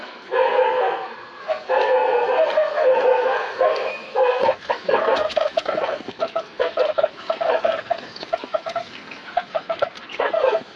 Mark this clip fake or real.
fake